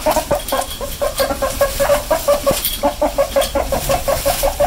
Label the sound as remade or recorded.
remade